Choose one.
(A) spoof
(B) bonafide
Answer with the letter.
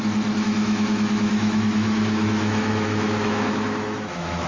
A